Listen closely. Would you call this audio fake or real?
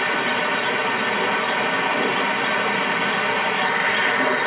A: fake